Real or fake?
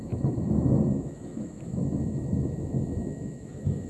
fake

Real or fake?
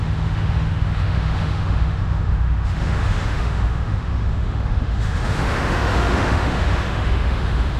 fake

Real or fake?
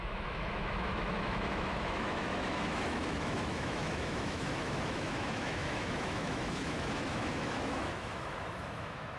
fake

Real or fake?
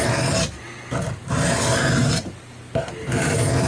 real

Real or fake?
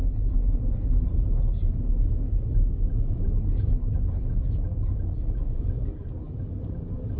real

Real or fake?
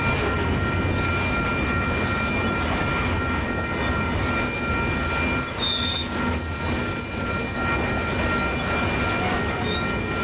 real